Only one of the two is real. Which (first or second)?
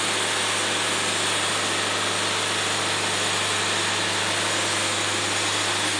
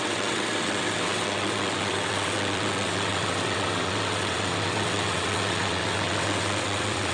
first